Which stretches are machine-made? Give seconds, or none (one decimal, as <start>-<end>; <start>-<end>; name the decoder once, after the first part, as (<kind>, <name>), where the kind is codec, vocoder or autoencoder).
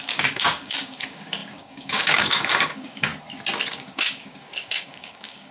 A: 0.0-3.1 (codec, DAC); 3.7-5.5